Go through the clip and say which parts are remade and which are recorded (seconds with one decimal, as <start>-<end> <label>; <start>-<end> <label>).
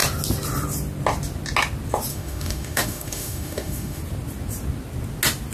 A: 0.0-2.1 recorded; 2.1-4.0 remade; 4.0-5.5 recorded